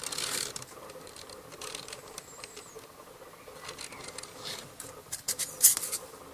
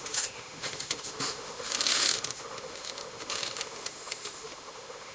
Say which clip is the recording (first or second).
first